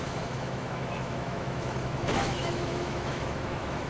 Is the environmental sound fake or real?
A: fake